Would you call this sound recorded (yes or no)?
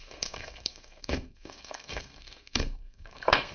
no